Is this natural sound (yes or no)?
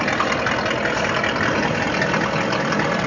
yes